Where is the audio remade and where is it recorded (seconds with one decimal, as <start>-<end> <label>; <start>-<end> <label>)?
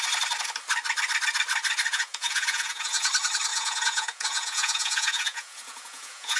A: 0.0-1.9 recorded; 1.9-3.1 remade; 3.1-3.5 recorded; 3.5-6.4 remade